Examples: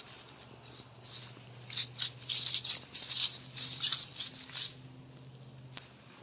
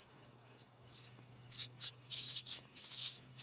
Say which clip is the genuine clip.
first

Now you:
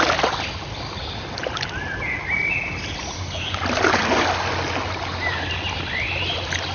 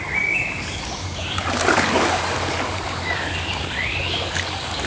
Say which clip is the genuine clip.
first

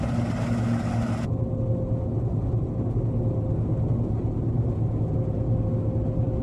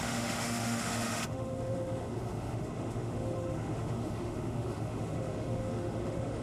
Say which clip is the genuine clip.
first